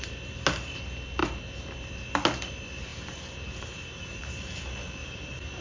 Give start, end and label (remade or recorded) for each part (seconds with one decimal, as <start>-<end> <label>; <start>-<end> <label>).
0.0-1.2 recorded; 1.2-1.7 remade; 1.7-2.9 recorded; 2.9-4.6 remade; 4.6-5.0 recorded; 5.0-5.6 remade